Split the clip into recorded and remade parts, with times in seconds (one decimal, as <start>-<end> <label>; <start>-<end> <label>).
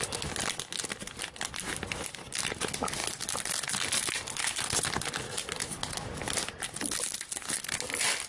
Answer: 0.0-8.3 recorded